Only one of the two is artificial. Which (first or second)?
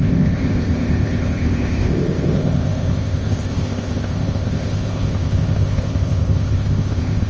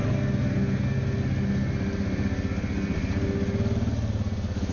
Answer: first